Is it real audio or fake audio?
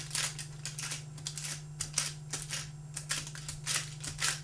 real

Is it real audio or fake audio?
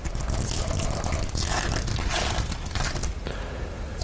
real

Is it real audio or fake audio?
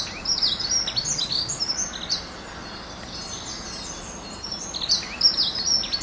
real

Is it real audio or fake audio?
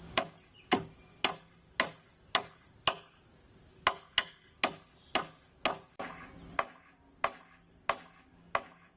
real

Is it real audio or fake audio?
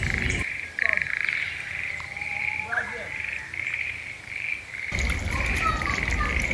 real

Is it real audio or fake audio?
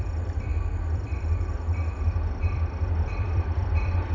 fake